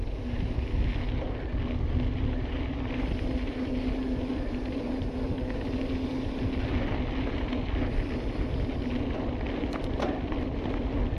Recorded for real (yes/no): yes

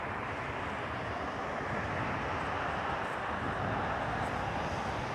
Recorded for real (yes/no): yes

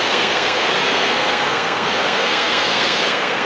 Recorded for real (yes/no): no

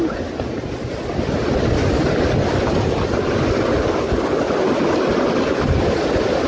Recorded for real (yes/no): yes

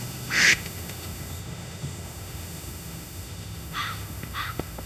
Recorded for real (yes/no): no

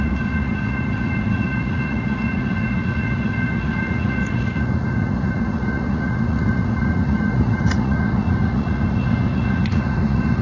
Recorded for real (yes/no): no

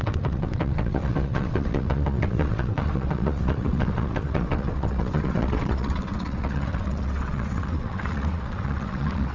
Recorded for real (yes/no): no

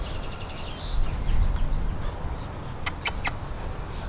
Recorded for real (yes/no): yes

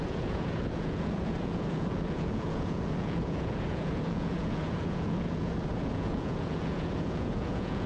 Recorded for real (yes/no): no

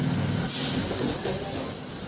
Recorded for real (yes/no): yes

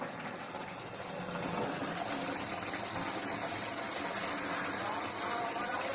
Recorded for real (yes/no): yes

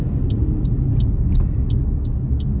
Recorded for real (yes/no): yes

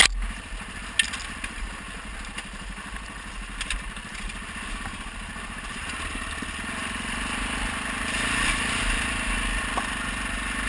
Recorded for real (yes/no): yes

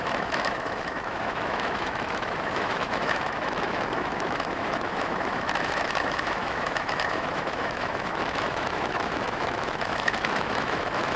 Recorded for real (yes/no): no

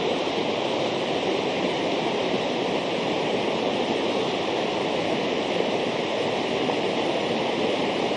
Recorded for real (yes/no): no